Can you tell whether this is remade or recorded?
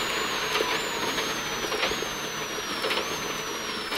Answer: recorded